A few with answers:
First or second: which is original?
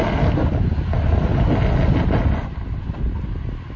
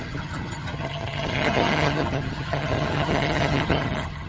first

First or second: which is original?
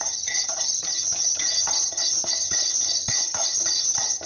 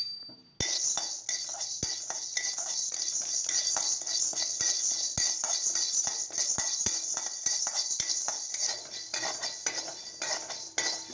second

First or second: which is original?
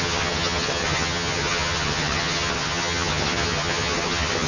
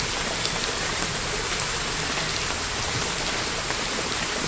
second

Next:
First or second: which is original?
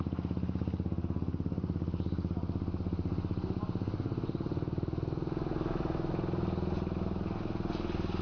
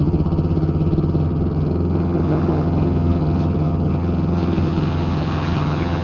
first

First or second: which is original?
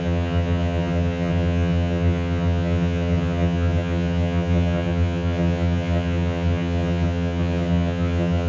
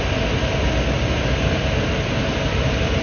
second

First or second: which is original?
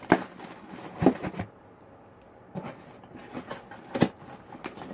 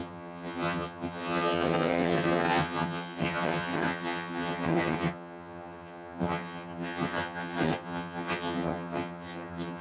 first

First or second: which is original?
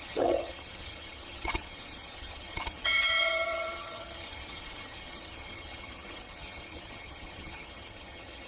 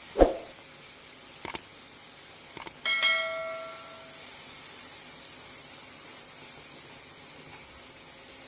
second